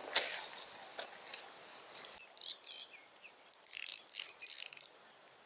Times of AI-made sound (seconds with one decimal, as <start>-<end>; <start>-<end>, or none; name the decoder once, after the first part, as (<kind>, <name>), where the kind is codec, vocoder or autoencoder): 0.5-5.5 (vocoder, BigVGAN v2)